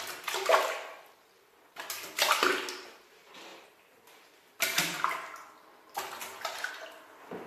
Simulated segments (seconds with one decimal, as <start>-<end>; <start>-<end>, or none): none